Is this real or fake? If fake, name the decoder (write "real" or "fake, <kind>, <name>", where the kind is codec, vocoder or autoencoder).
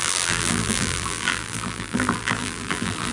fake, vocoder, BigVGAN v2